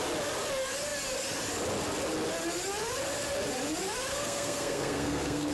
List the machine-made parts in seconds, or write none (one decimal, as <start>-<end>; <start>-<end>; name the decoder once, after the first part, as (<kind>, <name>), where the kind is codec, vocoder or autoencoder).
4.1-5.5 (codec, SNAC)